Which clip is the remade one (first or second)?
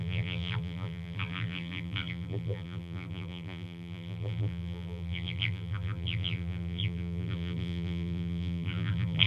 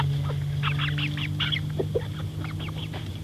first